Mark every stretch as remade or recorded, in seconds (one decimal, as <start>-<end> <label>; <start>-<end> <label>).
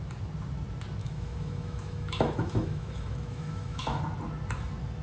0.0-1.0 recorded; 1.0-4.0 remade; 4.0-5.0 recorded